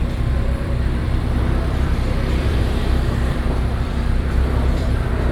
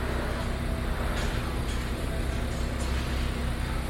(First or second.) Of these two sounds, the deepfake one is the first